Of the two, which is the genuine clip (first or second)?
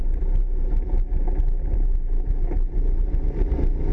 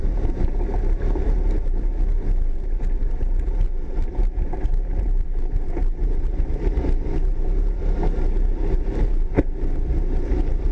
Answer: first